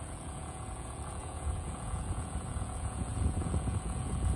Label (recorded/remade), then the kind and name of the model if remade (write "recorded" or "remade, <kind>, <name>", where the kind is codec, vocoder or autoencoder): remade, vocoder, Vocos